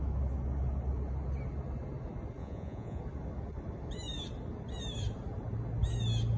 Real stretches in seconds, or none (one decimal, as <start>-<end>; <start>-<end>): 0.0-2.4; 3.0-6.4